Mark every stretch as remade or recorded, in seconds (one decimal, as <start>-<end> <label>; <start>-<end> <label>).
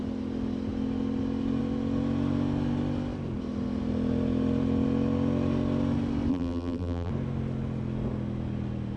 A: 0.0-6.3 recorded; 6.3-7.1 remade; 7.1-9.0 recorded